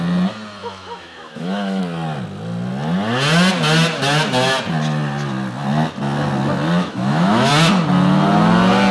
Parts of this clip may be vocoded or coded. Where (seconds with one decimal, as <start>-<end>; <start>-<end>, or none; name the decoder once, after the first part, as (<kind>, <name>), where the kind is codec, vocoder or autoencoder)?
0.6-1.8 (autoencoder, DAC-VAE); 6.8-7.5